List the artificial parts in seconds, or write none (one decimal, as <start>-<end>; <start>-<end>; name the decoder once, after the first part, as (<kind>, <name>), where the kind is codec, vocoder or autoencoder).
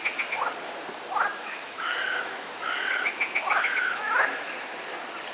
1.3-4.5 (autoencoder, DAC-VAE)